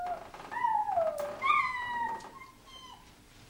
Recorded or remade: recorded